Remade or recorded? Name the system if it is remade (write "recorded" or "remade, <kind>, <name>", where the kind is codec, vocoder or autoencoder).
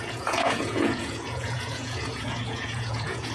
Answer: remade, vocoder, Vocos